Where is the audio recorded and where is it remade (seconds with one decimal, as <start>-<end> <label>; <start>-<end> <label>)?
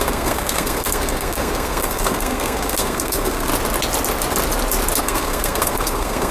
0.0-3.5 remade; 3.5-5.0 recorded; 5.0-6.3 remade